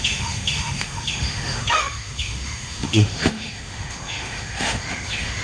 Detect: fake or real fake